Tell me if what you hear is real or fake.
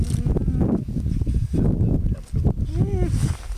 real